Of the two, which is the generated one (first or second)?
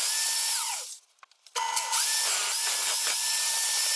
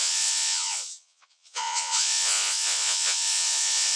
second